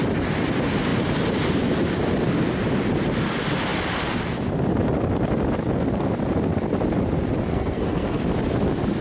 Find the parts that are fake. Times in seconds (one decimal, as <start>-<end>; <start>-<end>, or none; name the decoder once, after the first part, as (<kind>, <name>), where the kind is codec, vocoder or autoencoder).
7.5-8.2 (codec, SNAC)